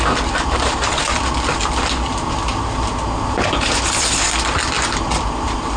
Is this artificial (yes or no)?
no